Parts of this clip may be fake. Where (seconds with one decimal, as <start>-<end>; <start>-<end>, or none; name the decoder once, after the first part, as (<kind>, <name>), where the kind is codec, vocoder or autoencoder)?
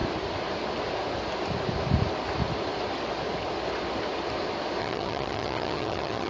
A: 4.8-6.3 (vocoder, HiFi-GAN)